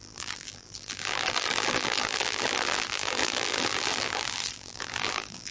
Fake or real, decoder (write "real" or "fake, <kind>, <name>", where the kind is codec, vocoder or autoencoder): fake, vocoder, BigVGAN v2